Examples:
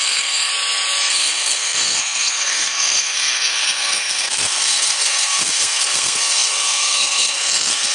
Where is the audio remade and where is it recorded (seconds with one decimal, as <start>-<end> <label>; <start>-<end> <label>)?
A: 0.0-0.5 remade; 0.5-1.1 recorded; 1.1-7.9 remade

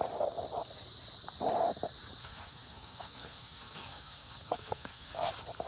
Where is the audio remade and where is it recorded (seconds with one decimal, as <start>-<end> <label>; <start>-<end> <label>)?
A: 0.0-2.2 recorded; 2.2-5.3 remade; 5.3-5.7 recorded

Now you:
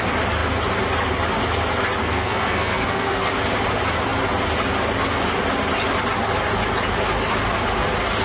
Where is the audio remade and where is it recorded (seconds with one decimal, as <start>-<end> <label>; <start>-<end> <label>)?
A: 0.0-2.0 recorded; 2.0-3.3 remade; 3.3-8.2 recorded